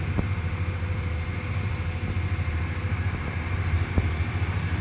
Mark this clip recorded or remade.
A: remade